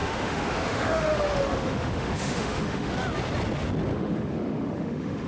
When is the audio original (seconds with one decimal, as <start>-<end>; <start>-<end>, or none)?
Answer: 2.9-3.9